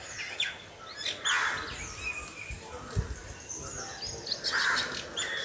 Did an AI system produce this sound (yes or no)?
no